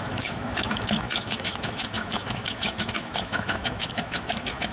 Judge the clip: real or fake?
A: fake